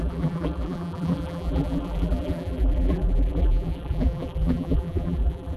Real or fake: fake